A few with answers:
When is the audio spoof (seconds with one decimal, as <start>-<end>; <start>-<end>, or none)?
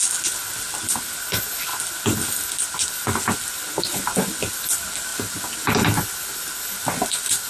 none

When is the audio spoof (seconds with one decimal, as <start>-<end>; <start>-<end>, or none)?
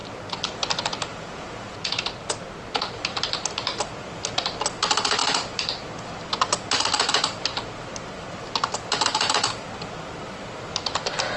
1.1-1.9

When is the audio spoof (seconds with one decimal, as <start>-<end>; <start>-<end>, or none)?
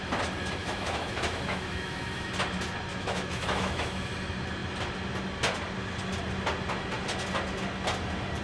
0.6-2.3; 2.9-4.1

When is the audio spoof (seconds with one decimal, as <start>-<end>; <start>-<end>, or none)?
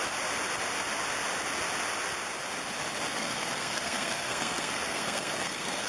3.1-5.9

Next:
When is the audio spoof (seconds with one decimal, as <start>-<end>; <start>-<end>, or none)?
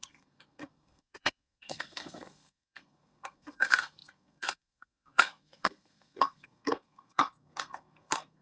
0.0-8.4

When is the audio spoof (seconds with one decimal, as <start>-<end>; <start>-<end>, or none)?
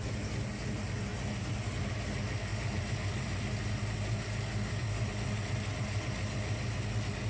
2.5-5.1